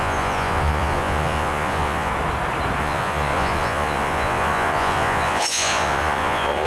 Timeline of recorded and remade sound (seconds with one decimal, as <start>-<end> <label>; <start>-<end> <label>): 0.0-2.1 remade; 2.1-2.8 recorded; 2.8-6.7 remade